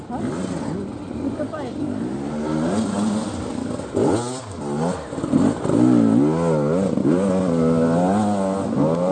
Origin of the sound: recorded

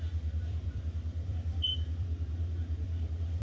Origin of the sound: remade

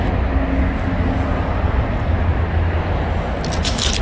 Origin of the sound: recorded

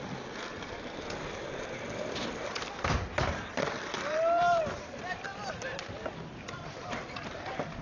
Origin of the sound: remade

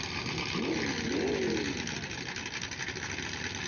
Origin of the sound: recorded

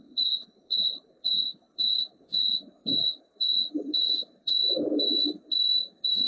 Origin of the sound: remade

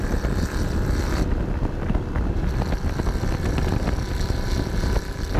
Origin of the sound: recorded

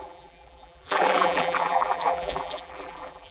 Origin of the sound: remade